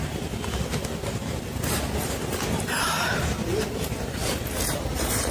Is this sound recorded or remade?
recorded